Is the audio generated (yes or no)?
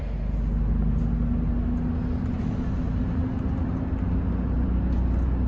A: no